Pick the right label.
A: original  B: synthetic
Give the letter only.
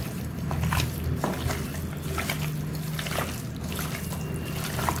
A